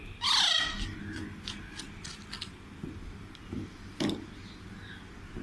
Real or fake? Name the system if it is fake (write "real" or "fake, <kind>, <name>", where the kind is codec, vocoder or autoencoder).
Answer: real